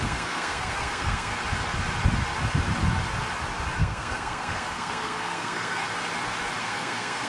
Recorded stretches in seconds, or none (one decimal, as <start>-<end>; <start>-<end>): 1.3-3.8; 5.8-6.6